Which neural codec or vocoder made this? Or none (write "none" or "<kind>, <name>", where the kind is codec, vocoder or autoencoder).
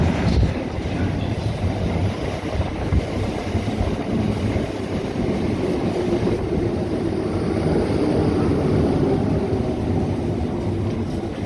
none